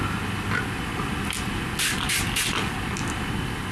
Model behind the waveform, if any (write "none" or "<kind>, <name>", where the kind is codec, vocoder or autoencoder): none